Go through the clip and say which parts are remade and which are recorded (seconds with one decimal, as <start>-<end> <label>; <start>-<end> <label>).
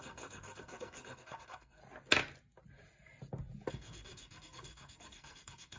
0.0-1.8 remade; 1.8-3.7 recorded; 3.7-5.8 remade